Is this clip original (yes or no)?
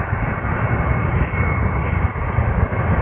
yes